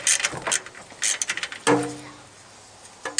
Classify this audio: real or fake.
real